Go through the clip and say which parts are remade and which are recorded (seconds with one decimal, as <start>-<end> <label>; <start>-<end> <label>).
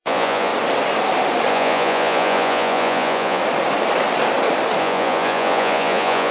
0.0-0.5 remade; 0.5-1.5 recorded; 1.5-3.4 remade; 3.4-4.8 recorded; 4.8-6.3 remade